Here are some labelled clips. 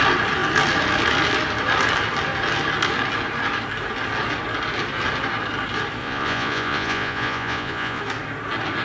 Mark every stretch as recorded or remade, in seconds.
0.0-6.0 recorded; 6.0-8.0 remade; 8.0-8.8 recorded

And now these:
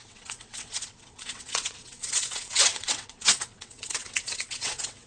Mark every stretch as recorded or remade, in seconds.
0.0-5.1 remade

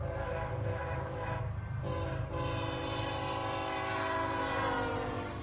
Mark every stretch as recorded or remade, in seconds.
0.0-0.7 recorded; 0.7-1.4 remade; 1.4-5.4 recorded